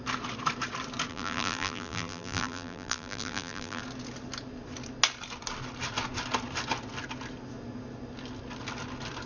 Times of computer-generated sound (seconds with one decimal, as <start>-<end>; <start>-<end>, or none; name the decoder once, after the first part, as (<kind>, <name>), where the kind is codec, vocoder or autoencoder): 1.1-3.8 (vocoder, BigVGAN v2)